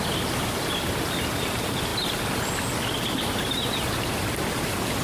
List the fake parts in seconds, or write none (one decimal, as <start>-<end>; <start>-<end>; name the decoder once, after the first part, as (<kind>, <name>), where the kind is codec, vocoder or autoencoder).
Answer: none